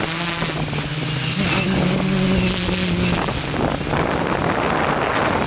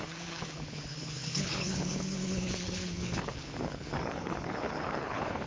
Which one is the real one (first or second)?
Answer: first